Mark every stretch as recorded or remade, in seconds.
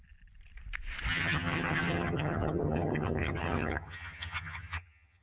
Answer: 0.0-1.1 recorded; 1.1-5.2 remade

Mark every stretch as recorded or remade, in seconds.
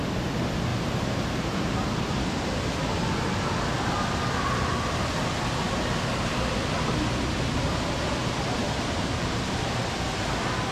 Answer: 0.0-0.7 recorded; 0.7-2.1 remade; 2.1-8.6 recorded; 8.6-9.8 remade; 9.8-10.7 recorded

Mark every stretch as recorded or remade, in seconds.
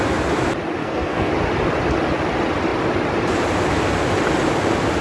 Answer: 0.0-0.8 recorded; 0.8-1.3 remade; 1.3-5.0 recorded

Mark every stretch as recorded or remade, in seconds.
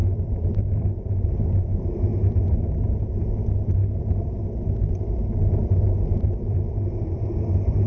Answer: 0.0-0.7 recorded; 0.7-2.1 remade; 2.1-2.9 recorded; 2.9-3.8 remade; 3.8-4.9 recorded; 4.9-7.9 remade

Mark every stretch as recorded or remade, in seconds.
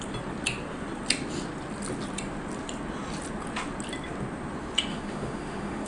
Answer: 0.0-4.9 recorded; 4.9-5.9 remade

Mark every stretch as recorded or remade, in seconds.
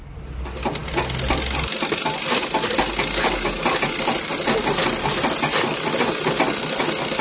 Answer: 0.0-7.2 recorded